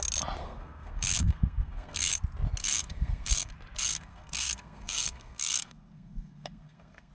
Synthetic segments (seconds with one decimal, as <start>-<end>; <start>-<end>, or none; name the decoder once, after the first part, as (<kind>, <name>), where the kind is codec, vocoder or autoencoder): 0.4-2.1 (codec, SNAC); 2.6-3.5; 3.9-7.1